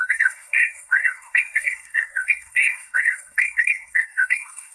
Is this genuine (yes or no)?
no